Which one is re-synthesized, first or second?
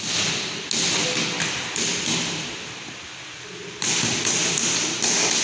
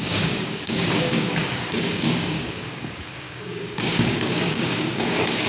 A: second